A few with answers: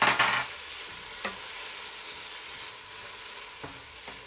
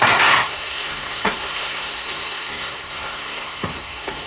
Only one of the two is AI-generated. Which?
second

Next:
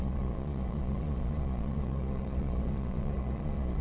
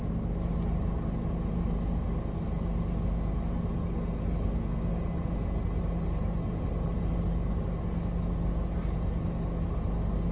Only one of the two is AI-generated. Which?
first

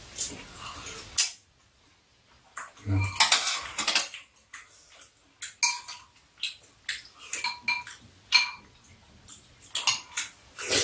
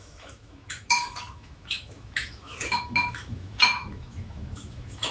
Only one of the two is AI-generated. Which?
second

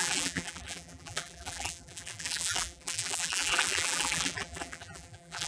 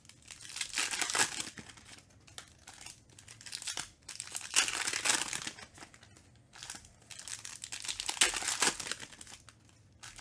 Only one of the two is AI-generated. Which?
first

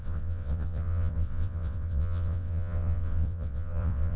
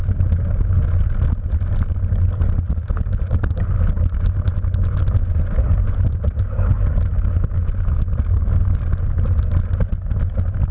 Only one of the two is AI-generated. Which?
first